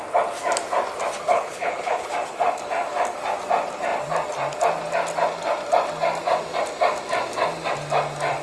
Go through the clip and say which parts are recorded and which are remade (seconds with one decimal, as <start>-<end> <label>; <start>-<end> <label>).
0.0-1.3 recorded; 1.3-2.1 remade; 2.1-8.4 recorded